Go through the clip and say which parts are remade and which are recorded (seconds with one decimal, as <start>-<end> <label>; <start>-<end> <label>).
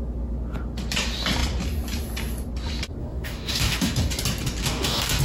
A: 0.0-3.0 recorded; 3.0-4.0 remade; 4.0-4.6 recorded; 4.6-5.2 remade